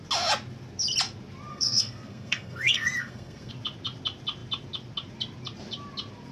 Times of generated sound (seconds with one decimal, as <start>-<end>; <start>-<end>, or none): 1.5-3.5